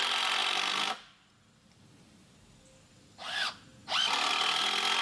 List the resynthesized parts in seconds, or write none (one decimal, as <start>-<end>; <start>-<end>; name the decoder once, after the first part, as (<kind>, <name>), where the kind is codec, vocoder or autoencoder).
none